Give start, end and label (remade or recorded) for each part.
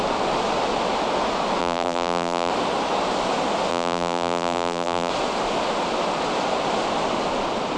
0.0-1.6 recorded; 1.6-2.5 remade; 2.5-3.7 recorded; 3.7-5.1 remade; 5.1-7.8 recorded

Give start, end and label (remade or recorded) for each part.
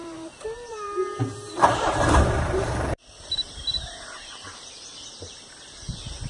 0.0-3.8 remade; 3.8-4.9 recorded; 4.9-5.5 remade; 5.5-6.3 recorded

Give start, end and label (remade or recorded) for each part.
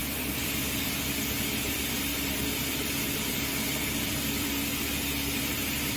0.0-1.2 remade; 1.2-2.1 recorded; 2.1-6.0 remade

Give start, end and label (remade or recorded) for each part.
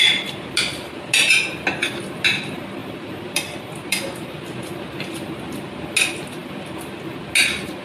0.0-2.8 recorded; 2.8-3.6 remade; 3.6-6.4 recorded; 6.4-7.0 remade; 7.0-7.8 recorded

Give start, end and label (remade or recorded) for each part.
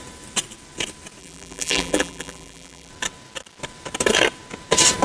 0.0-1.2 recorded; 1.2-2.9 remade; 2.9-5.0 recorded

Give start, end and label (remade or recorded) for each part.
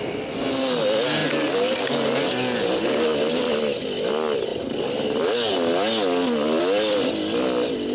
0.0-7.9 recorded